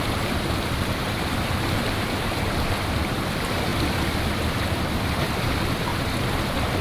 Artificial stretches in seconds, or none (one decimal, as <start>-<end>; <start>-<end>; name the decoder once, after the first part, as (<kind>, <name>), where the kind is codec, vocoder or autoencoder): 0.0-5.9 (vocoder, BigVGAN v2)